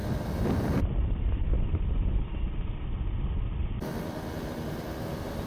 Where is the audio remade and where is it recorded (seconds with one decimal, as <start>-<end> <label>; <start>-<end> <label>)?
0.0-5.5 remade